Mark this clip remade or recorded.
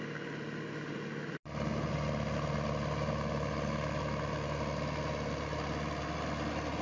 recorded